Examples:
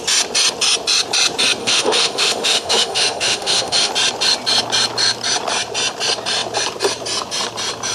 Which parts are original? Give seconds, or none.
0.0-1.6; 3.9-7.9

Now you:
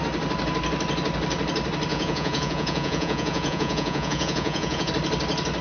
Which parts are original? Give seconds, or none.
0.0-1.9; 4.9-5.6

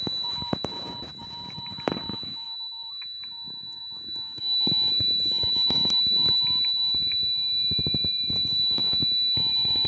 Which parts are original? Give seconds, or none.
3.8-4.4; 8.8-9.5

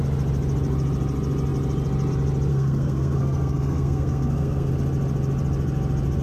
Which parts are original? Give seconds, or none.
0.0-2.5; 4.7-6.2

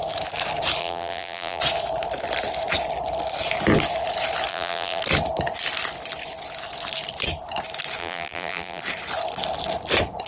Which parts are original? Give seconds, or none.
0.0-0.8; 1.6-4.5; 5.0-8.0; 8.8-10.3

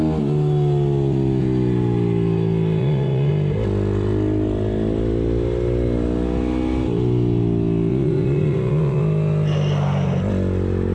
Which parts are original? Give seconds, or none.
0.0-2.8; 3.3-7.9; 9.0-10.9

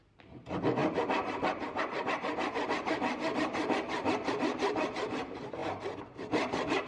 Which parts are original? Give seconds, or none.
0.0-6.9

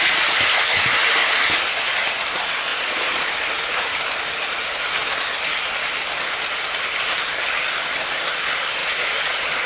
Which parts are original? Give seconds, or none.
0.0-2.7; 3.3-8.8